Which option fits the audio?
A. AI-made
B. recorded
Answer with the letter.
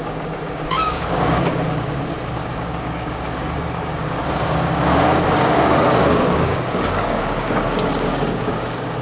A